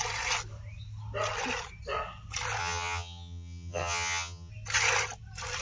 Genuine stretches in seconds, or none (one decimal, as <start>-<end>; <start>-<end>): 0.0-2.6; 4.5-5.6